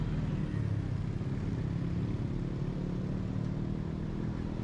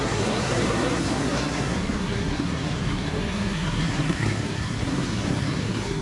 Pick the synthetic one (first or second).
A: second